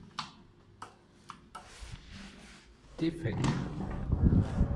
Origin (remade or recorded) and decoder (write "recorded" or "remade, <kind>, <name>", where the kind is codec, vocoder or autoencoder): recorded